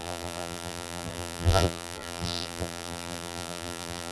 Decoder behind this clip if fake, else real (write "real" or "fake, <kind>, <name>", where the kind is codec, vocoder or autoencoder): fake, vocoder, BigVGAN v2